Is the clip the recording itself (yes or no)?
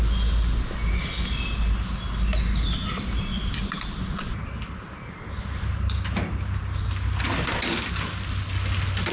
yes